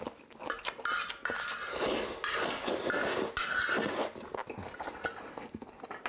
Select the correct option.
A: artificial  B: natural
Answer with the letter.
B